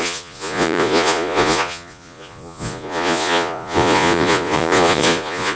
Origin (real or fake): fake